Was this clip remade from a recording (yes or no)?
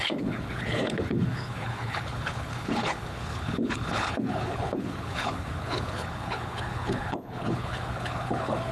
yes